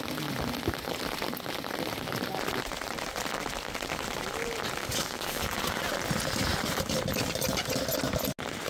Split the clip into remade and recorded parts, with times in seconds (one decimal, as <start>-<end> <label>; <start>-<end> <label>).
0.0-4.8 recorded; 4.8-5.4 remade; 5.4-8.7 recorded